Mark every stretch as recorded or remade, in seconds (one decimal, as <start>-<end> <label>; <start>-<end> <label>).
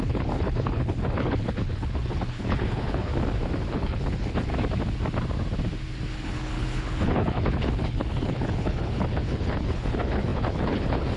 0.0-3.1 remade; 3.1-3.7 recorded; 3.7-4.5 remade; 4.5-6.1 recorded; 6.1-11.2 remade